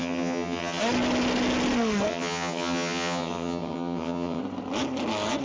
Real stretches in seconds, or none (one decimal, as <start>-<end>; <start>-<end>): 0.8-2.1; 4.4-5.4